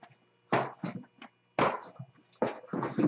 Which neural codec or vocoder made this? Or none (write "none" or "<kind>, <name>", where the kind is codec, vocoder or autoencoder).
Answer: none